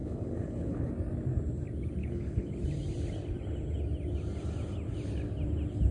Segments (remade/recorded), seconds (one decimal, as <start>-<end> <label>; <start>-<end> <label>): 0.0-0.9 remade; 0.9-2.0 recorded; 2.0-2.5 remade; 2.5-5.9 recorded